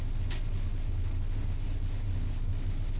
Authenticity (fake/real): real